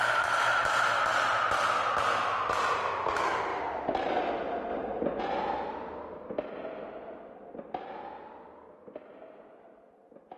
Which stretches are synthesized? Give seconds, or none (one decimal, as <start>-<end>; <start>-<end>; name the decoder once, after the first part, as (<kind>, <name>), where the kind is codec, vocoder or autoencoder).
4.7-5.2 (vocoder, BigVGAN v2)